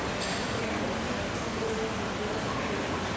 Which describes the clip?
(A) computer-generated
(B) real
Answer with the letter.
B